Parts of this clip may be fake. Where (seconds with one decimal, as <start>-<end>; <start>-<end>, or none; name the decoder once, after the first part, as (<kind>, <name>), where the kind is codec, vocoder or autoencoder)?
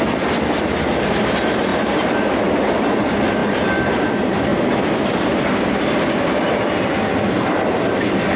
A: 1.7-2.5 (vocoder, BigVGAN v2); 3.4-4.1